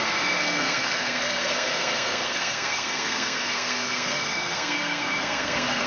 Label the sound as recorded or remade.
remade